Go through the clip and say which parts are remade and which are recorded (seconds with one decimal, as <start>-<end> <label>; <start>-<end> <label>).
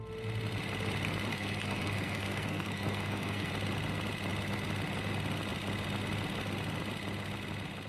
0.0-1.3 recorded; 1.3-3.5 remade; 3.5-7.9 recorded